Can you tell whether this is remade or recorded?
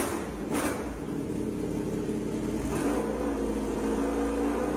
recorded